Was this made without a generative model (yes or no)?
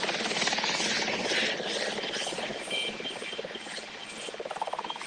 yes